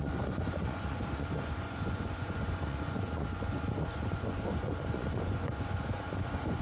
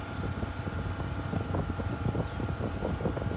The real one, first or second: second